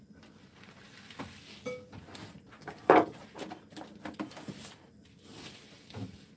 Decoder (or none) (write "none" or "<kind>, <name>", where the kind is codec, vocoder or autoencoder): none